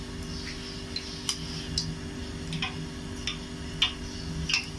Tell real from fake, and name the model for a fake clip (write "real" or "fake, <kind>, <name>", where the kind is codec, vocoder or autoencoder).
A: real